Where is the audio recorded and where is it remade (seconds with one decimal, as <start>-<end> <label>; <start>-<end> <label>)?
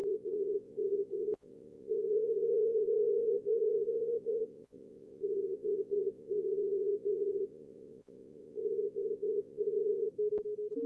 0.0-10.1 remade; 10.1-10.9 recorded